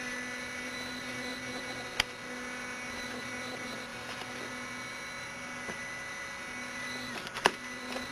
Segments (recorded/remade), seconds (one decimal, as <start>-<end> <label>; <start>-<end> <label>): 0.0-1.3 remade; 1.3-2.2 recorded; 2.2-8.1 remade